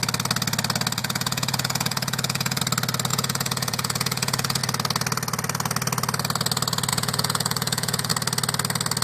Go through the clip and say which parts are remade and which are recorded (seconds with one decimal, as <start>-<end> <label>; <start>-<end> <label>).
0.0-1.0 recorded; 1.0-2.6 remade; 2.6-3.1 recorded; 3.1-4.6 remade; 4.6-6.9 recorded; 6.9-8.1 remade; 8.1-9.0 recorded